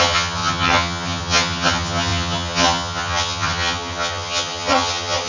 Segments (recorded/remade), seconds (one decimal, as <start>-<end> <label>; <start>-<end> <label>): 0.0-5.3 remade